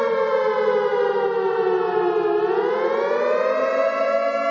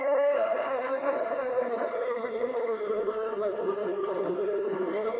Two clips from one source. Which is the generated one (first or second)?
second